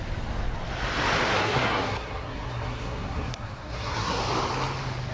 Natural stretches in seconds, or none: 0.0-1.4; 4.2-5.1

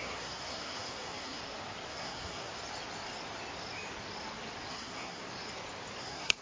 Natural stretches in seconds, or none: 1.4-1.9; 2.5-4.7; 5.2-6.0

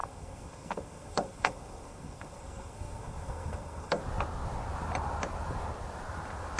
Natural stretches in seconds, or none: 4.0-6.6